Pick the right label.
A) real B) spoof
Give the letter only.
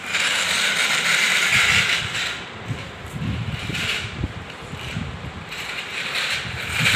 B